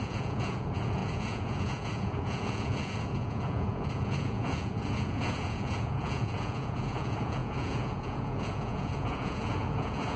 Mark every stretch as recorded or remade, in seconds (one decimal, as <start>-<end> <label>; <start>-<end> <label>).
0.0-10.2 remade